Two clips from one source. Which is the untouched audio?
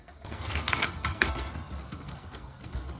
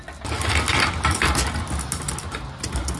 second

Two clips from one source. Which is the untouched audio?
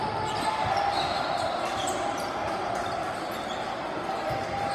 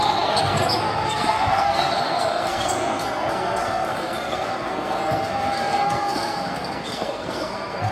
first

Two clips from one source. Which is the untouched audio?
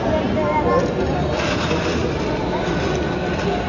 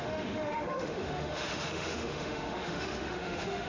first